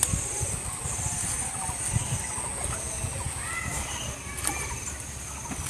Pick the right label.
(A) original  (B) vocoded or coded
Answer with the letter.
A